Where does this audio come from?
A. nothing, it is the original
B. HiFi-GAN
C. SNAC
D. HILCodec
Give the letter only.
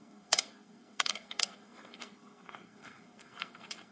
C